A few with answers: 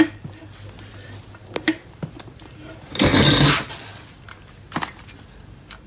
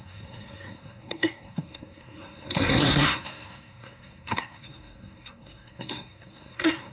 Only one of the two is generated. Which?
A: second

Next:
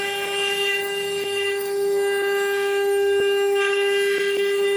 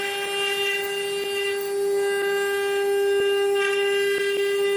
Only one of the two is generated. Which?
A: first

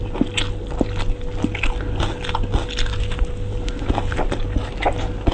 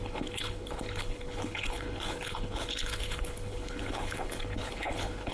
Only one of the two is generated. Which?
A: second